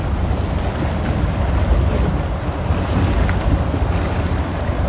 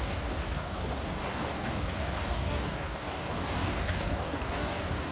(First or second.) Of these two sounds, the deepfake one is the second